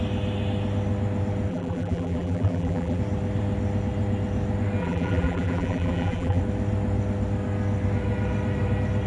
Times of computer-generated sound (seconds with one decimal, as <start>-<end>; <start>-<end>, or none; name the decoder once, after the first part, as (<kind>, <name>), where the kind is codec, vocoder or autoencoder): 1.5-3.0 (vocoder, BigVGAN v2); 4.8-6.4